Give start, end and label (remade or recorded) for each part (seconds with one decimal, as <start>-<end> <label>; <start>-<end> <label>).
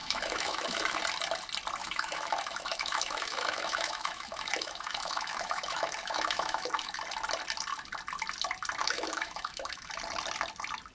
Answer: 0.0-1.0 remade; 1.0-1.8 recorded; 1.8-7.0 remade; 7.0-8.8 recorded; 8.8-9.9 remade; 9.9-10.9 recorded